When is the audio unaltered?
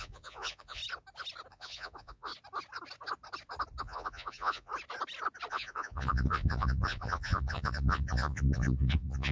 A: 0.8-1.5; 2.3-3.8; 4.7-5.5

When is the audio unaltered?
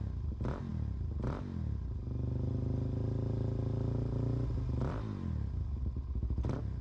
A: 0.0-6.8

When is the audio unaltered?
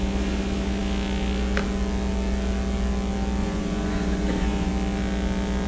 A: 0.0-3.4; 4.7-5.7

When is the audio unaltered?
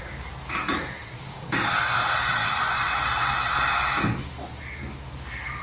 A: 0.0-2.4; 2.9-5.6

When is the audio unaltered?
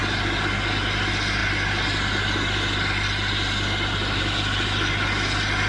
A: 0.0-5.7